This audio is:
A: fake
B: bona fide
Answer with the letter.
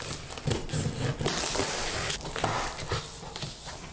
B